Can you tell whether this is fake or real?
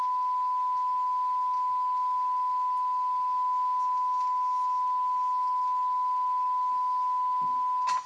real